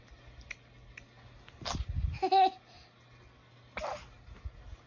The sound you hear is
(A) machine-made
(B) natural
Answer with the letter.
B